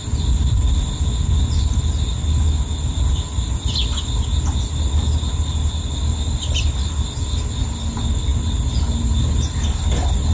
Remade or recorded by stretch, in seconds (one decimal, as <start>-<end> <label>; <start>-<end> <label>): 0.0-10.3 recorded